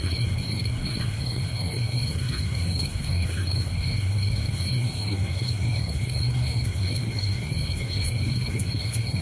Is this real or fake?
fake